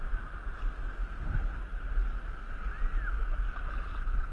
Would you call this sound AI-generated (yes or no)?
no